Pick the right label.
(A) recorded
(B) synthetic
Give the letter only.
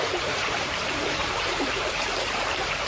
B